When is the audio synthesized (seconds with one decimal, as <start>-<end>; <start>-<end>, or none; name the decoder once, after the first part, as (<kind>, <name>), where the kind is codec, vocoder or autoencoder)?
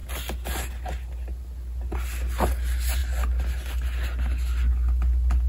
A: none